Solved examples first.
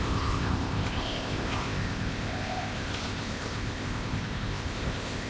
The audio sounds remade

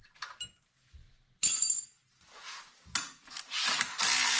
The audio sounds recorded